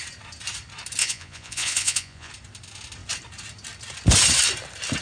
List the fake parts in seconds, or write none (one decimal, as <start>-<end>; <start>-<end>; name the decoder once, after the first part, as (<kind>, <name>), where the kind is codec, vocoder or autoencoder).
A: 1.0-2.3 (vocoder, Vocos)

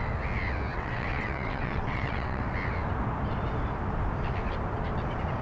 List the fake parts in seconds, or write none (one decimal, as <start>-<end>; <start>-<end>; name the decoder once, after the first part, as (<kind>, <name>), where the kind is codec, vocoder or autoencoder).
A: 0.7-2.4 (vocoder, WaveNeXt)